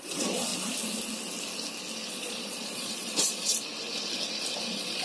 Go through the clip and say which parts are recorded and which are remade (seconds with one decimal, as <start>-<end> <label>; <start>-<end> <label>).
0.0-0.5 remade; 0.5-2.1 recorded; 2.1-3.5 remade; 3.5-4.6 recorded; 4.6-5.0 remade